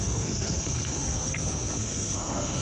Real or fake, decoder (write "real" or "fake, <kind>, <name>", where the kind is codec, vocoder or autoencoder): fake, codec, SNAC